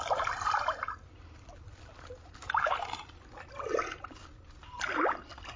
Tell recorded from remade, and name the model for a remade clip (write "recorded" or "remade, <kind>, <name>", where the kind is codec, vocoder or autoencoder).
recorded